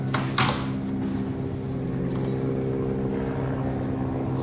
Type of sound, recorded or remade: recorded